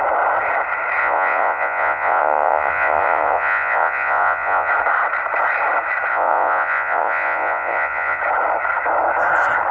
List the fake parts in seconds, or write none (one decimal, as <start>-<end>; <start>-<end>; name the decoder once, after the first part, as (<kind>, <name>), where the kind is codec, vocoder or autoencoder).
1.0-4.7 (vocoder, Vocos); 6.1-8.2